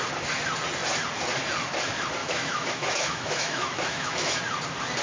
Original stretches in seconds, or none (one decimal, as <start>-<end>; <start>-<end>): 0.0-2.2; 4.4-5.0

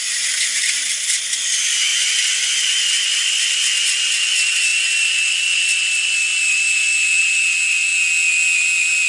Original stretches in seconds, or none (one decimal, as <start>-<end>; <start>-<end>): 0.0-0.5; 1.0-1.9; 2.7-9.1

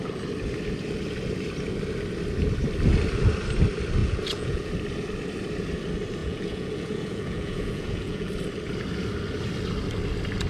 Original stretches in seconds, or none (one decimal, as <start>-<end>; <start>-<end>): 0.0-4.0; 4.7-6.2; 8.3-10.5

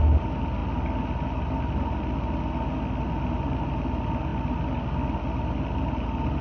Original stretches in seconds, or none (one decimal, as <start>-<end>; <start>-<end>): 0.0-6.4

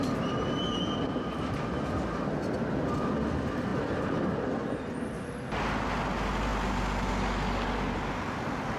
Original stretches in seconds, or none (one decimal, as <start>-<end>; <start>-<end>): 0.0-3.7; 4.2-8.8